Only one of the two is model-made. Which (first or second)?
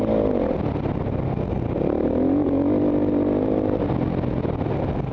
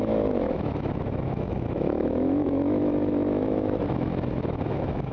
second